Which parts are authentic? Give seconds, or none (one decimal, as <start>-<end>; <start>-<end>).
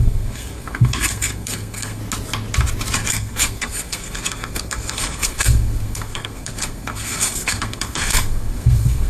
2.0-3.1